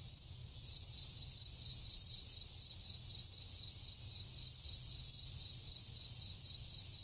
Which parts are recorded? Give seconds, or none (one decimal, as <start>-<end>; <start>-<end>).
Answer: 0.0-0.4; 1.2-1.7; 2.5-7.0